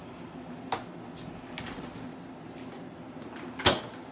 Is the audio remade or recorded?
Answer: recorded